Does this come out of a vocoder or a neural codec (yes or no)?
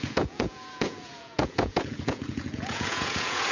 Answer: yes